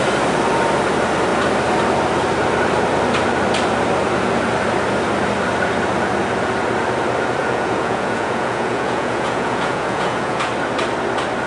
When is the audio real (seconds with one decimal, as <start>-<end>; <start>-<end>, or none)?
0.0-7.4; 10.5-11.5